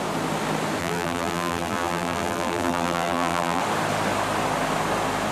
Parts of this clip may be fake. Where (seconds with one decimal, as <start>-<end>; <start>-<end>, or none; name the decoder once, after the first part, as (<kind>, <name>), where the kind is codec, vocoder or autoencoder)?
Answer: 0.8-3.6 (vocoder, BigVGAN v2)